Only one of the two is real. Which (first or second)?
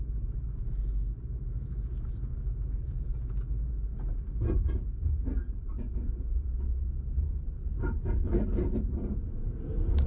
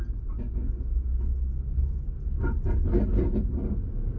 second